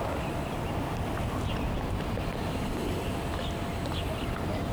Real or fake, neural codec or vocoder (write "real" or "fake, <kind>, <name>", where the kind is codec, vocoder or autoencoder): real